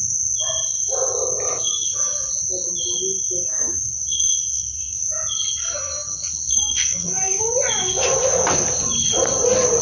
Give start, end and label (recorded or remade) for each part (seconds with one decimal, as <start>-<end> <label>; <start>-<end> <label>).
0.0-1.5 recorded; 1.5-2.3 remade; 2.3-3.5 recorded; 3.5-5.0 remade; 5.0-5.6 recorded; 5.6-7.4 remade; 7.4-9.8 recorded